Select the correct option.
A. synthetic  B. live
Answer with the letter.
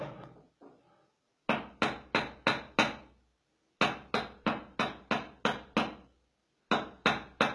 B